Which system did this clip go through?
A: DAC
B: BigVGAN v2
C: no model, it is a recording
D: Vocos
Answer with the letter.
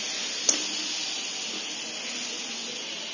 C